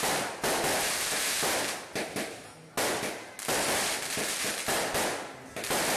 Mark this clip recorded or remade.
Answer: recorded